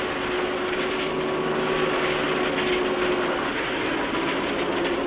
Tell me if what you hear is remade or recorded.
recorded